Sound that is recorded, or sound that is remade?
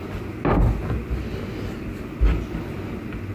recorded